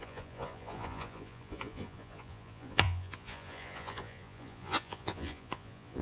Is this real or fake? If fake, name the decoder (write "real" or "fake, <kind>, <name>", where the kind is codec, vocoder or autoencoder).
fake, vocoder, Vocos